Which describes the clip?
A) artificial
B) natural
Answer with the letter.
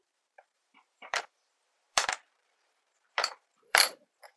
A